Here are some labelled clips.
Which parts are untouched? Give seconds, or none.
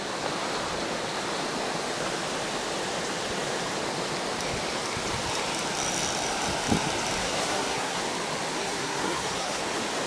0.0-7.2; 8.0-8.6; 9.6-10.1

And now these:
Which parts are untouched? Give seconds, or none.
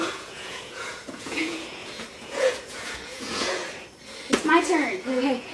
3.6-4.6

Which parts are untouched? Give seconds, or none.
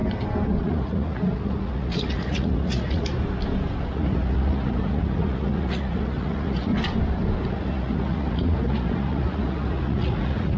0.0-0.6; 3.1-3.9; 6.7-7.5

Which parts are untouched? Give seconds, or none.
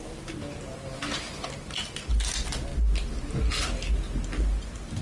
0.0-5.0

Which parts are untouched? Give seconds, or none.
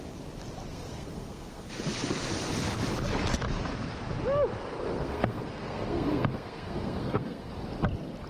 0.0-0.7; 1.8-4.9; 7.5-8.3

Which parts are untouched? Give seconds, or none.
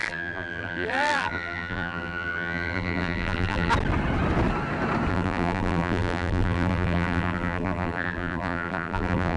3.7-5.1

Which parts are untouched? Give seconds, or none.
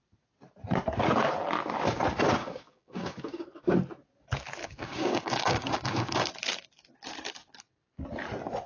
0.0-2.4; 3.7-4.6; 6.3-8.7